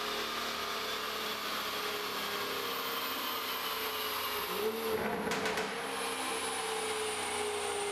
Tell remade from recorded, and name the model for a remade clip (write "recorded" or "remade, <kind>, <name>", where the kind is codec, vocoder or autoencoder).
recorded